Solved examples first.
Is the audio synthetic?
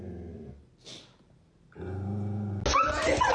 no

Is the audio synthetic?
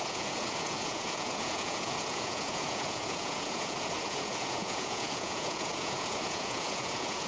yes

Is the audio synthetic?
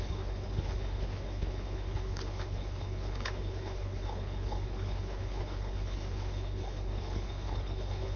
yes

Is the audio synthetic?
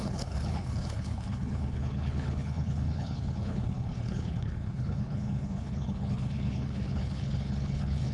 yes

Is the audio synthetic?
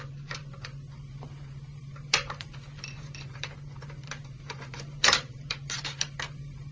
yes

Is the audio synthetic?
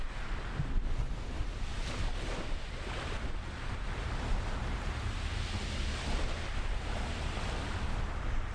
yes